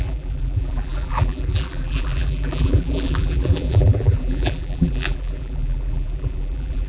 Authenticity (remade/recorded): remade